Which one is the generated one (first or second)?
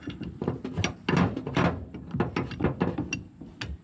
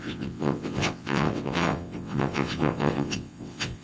second